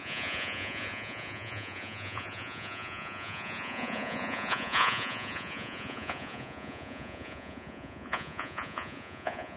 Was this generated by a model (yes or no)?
yes